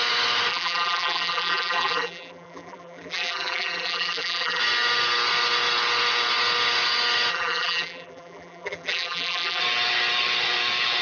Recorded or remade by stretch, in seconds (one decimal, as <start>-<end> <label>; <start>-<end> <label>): 0.0-0.5 recorded; 0.5-4.6 remade; 4.6-7.3 recorded; 7.3-9.6 remade; 9.6-11.0 recorded